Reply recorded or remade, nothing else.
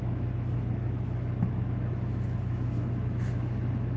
remade